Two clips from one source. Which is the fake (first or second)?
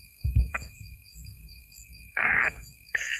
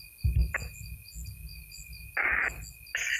first